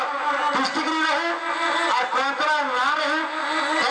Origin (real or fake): real